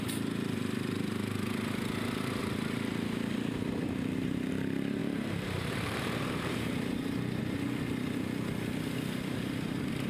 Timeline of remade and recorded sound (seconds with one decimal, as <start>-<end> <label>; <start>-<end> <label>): 0.0-2.4 recorded; 2.4-4.5 remade; 4.5-5.0 recorded; 5.0-7.4 remade; 7.4-10.1 recorded